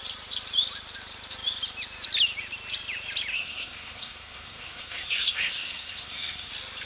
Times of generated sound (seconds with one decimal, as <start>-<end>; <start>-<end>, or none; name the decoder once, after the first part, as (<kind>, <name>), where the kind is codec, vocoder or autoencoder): 3.3-6.5 (codec, SNAC)